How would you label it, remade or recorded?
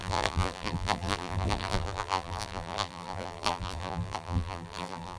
remade